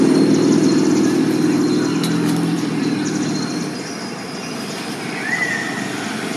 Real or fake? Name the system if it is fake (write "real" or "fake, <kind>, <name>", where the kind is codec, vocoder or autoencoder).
fake, vocoder, BigVGAN v2